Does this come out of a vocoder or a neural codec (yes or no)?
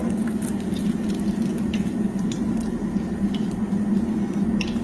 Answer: no